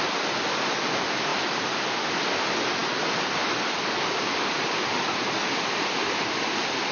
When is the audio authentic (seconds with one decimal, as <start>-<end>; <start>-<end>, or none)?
0.0-6.9